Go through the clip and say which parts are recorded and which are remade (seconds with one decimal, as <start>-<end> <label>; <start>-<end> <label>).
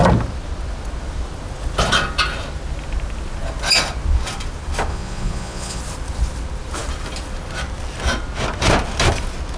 0.0-4.9 recorded; 4.9-5.8 remade; 5.8-9.6 recorded